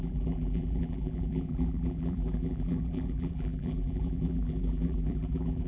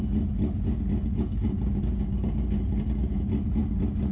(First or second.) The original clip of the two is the second